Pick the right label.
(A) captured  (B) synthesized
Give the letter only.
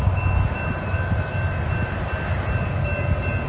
A